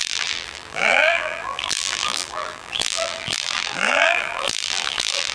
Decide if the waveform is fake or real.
fake